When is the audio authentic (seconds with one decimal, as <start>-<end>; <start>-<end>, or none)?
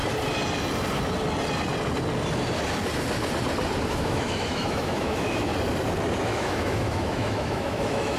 0.0-3.9; 5.5-6.2